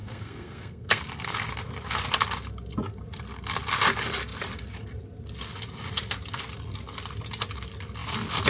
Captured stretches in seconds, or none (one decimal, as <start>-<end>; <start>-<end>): 1.0-8.5